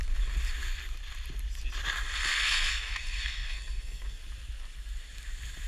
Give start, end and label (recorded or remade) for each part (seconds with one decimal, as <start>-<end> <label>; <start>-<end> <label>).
0.0-2.3 recorded; 2.3-4.2 remade; 4.2-5.7 recorded